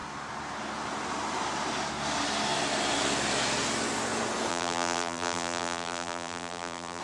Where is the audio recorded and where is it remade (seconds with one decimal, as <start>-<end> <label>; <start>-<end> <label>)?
0.0-4.5 recorded; 4.5-7.0 remade